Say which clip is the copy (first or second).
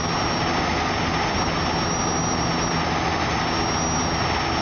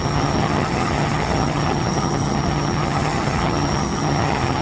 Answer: second